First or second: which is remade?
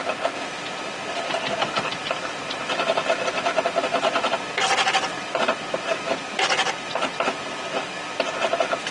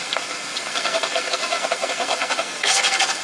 second